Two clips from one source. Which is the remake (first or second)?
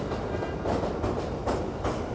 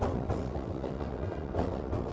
second